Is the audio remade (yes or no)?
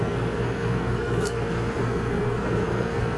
yes